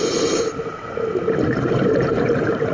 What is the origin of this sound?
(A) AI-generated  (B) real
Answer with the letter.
A